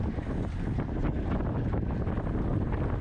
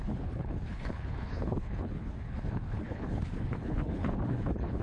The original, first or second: first